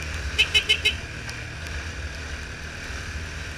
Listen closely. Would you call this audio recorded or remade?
recorded